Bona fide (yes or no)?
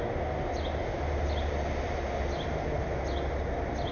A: yes